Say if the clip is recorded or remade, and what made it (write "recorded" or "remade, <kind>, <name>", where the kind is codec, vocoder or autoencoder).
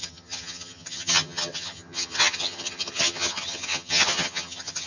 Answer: remade, vocoder, HiFi-GAN